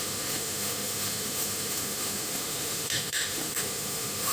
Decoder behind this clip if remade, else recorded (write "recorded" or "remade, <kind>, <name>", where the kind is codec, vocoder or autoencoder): remade, autoencoder, DAC-VAE